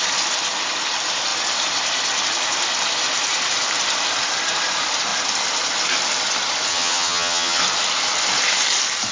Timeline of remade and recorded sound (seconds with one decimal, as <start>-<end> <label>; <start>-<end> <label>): 0.0-6.7 recorded; 6.7-7.6 remade; 7.6-9.1 recorded